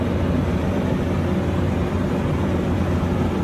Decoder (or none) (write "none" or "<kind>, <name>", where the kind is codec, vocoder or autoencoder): none